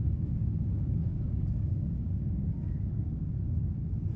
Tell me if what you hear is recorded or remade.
remade